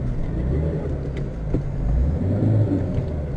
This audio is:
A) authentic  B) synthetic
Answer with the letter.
A